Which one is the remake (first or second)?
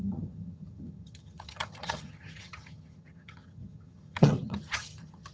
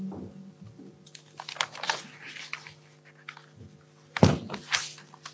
first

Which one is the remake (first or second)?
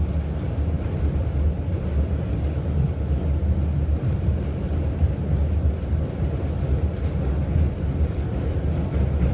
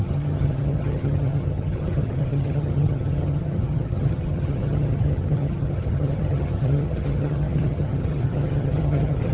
second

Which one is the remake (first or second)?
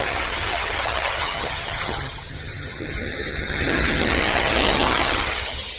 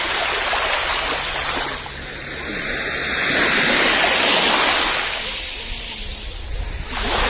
first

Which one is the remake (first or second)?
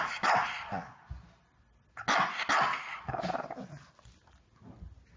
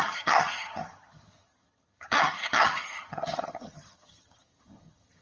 second